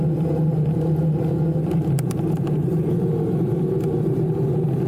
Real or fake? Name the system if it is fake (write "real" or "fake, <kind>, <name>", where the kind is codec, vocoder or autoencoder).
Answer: real